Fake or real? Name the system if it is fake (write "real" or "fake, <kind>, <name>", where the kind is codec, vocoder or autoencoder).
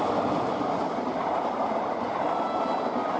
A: real